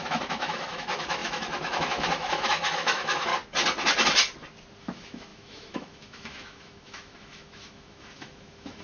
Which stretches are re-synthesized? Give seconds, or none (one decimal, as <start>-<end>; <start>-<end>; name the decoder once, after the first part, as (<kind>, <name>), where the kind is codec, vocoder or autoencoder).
0.0-3.3 (autoencoder, DAC-VAE); 4.8-8.8